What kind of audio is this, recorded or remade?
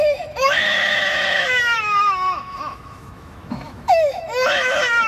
remade